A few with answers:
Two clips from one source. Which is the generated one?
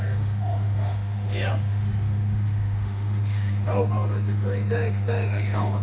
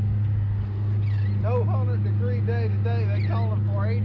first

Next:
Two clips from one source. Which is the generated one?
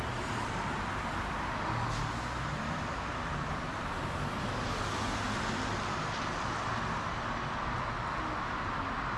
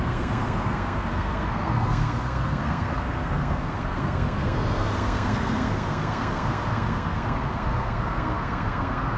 second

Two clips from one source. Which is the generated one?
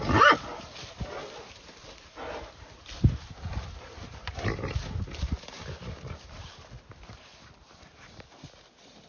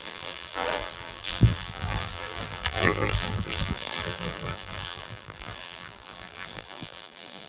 second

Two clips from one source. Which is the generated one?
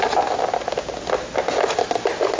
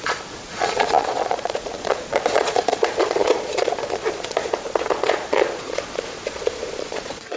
second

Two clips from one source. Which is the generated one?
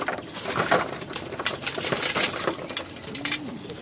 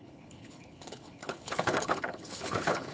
second